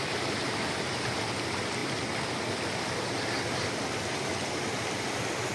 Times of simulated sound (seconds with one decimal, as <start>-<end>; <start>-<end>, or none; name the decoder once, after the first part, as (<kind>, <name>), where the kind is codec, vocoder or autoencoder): none